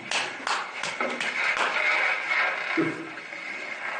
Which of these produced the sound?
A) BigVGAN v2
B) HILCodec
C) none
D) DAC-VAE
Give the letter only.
C